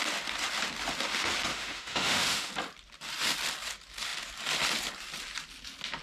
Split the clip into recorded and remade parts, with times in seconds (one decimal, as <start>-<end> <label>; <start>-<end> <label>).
0.0-1.5 recorded; 1.5-2.5 remade; 2.5-6.0 recorded